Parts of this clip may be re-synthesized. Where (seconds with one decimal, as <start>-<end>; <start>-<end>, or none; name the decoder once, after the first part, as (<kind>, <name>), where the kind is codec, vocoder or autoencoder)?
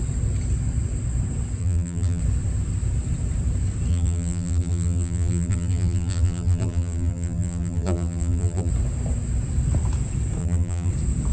1.6-2.2 (vocoder, BigVGAN v2); 3.9-8.7; 10.4-10.9